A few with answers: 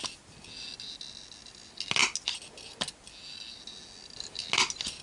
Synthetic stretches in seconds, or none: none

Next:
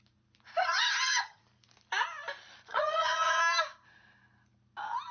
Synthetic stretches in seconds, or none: 0.6-1.4 (vocoder, HiFi-GAN); 2.7-3.4

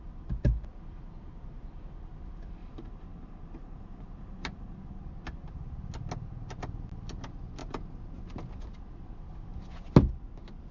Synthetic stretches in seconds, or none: 2.6-4.8 (vocoder, BigVGAN v2)

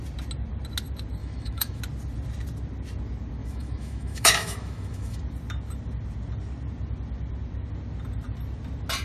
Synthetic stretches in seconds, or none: 1.2-1.8 (autoencoder, DAC-VAE); 3.4-5.2

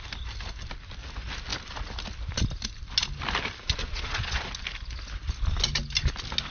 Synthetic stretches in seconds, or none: 3.8-4.5 (vocoder, Vocos)

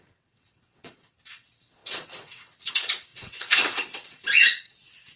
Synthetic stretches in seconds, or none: 0.0-5.2 (vocoder, WaveNeXt)